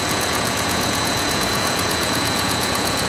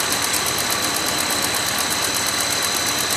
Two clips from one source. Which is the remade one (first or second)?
first